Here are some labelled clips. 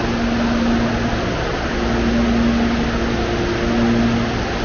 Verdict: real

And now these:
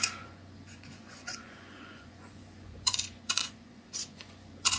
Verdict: fake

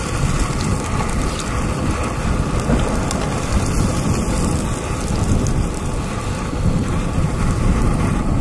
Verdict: real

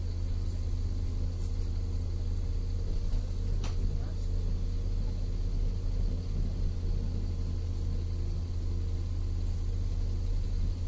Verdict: real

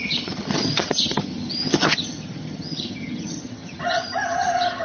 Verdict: fake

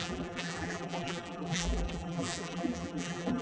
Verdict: fake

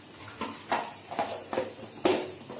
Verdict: real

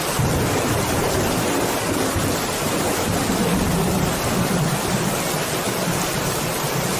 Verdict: real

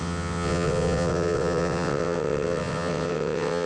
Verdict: fake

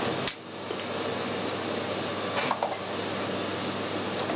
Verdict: real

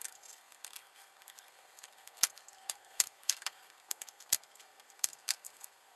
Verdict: fake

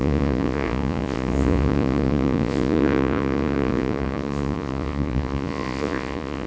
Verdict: fake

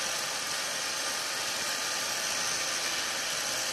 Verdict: real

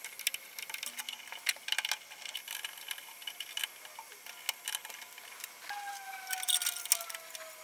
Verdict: real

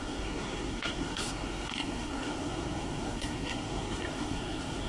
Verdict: fake